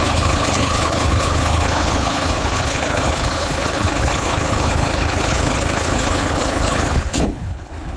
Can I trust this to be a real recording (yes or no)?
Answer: no